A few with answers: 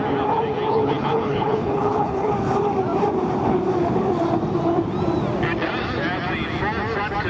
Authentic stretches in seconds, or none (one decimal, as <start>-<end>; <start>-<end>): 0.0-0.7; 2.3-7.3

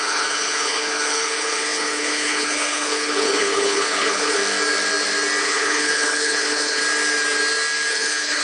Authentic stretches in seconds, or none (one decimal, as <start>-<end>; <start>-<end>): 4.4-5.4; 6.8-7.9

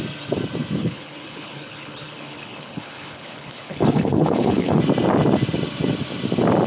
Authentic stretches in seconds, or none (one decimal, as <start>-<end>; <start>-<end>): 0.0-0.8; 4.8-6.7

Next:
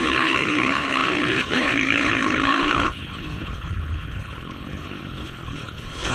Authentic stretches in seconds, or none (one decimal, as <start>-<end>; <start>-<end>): none